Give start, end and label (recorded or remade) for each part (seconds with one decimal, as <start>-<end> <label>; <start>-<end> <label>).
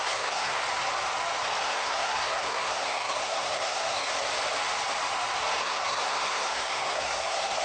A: 0.0-0.6 remade; 0.6-1.6 recorded; 1.6-4.1 remade; 4.1-5.6 recorded; 5.6-7.6 remade